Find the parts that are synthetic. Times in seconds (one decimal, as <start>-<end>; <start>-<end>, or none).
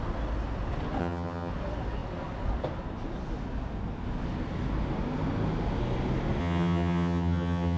1.0-1.5; 6.4-7.8